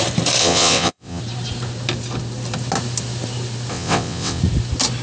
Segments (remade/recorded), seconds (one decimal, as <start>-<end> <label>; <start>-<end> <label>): 0.0-0.4 recorded; 0.4-1.2 remade; 1.2-3.7 recorded; 3.7-4.4 remade; 4.4-5.0 recorded